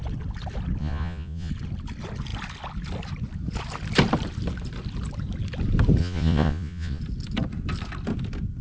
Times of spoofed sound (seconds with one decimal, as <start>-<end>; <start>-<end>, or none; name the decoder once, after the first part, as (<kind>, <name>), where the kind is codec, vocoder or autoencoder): 0.8-1.5 (vocoder, Vocos); 6.0-7.0

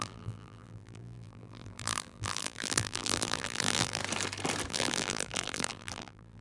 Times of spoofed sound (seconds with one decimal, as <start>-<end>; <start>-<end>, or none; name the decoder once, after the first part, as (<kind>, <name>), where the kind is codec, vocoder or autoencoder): 0.0-4.0 (vocoder, BigVGAN v2); 4.7-6.4

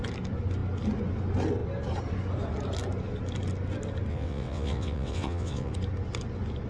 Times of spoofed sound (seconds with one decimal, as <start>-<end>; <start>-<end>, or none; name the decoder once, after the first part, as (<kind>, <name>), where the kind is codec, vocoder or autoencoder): 4.1-5.7 (vocoder, WaveNeXt)

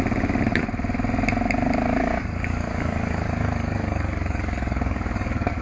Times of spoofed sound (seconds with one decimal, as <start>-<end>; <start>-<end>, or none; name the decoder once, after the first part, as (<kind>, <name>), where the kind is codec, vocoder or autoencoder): 2.0-5.6 (codec, DAC)

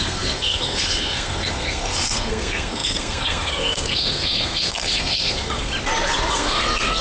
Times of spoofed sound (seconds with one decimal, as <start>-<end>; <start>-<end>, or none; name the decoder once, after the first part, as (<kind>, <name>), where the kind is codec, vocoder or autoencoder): 0.0-5.7 (codec, SNAC); 6.3-7.0

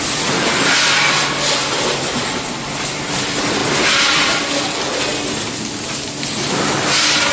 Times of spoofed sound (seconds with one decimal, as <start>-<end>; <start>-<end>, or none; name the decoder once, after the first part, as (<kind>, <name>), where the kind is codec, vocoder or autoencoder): none

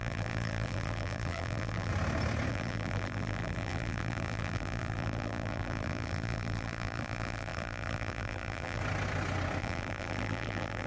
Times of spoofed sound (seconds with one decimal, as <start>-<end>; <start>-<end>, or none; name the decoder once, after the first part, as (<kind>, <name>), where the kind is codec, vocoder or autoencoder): 0.0-1.9 (vocoder, BigVGAN v2); 2.5-8.8; 9.6-10.9